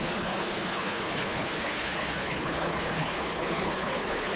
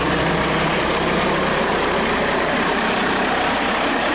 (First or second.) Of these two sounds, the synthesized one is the first